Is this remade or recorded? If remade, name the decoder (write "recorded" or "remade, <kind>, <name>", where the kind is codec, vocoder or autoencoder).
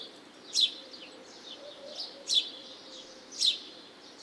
remade, vocoder, BigVGAN v2